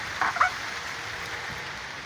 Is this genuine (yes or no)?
yes